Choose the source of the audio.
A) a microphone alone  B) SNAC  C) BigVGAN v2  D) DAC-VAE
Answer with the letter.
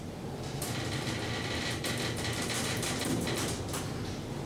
C